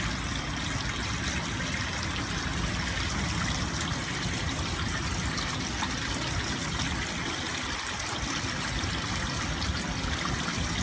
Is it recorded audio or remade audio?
recorded